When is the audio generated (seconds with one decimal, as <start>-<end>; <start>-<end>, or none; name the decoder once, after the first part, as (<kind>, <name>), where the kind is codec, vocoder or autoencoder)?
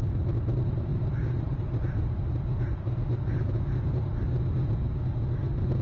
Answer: 0.9-4.4 (vocoder, BigVGAN v2)